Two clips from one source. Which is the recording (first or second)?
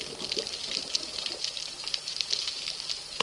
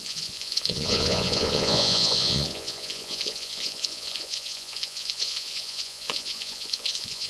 first